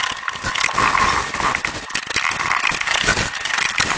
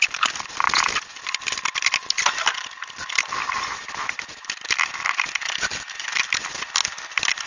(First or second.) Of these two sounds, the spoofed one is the second